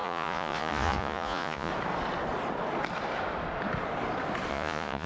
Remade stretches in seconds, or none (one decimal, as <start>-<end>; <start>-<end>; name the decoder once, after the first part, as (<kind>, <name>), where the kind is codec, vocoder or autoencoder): 0.0-1.7 (vocoder, Vocos); 4.5-5.1